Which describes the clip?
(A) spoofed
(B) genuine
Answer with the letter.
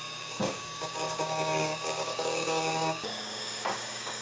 A